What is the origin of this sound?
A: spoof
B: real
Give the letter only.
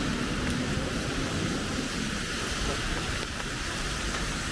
A